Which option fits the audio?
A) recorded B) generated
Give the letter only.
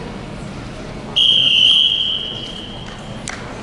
A